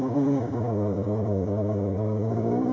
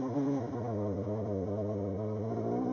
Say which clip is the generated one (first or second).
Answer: first